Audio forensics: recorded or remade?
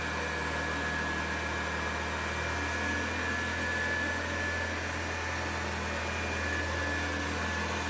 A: recorded